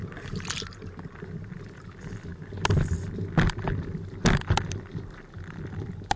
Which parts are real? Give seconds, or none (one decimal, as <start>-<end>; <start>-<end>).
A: 0.0-6.2